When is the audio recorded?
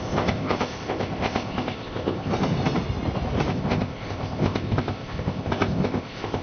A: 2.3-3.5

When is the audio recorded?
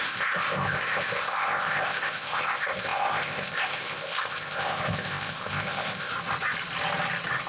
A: 6.1-7.5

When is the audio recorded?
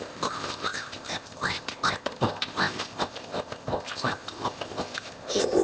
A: none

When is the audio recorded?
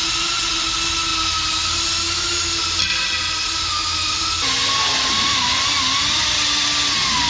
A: 0.0-7.3